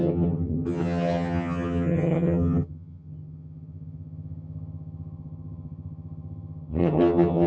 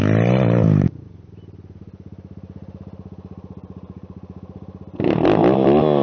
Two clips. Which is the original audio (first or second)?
second